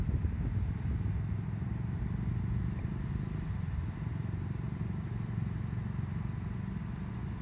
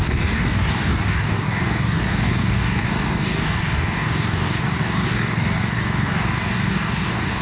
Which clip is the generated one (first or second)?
second